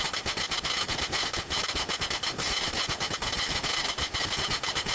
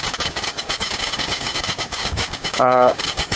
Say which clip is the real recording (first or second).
first